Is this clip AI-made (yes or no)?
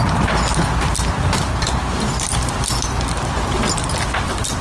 no